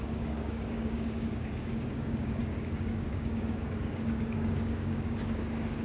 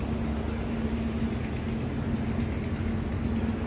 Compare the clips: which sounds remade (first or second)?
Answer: first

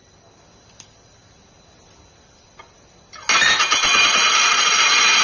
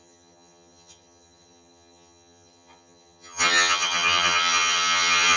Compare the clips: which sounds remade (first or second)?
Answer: second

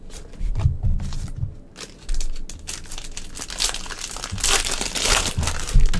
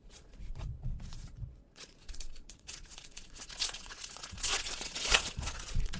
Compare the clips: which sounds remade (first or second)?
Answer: second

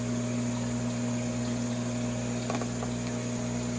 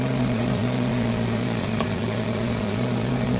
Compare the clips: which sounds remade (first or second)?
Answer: second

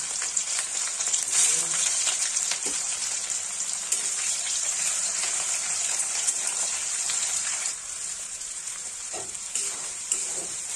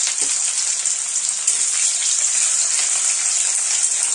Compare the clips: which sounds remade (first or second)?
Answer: first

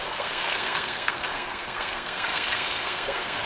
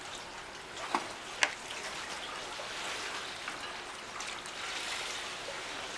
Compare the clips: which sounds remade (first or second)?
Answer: first